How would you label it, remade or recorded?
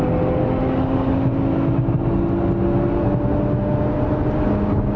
recorded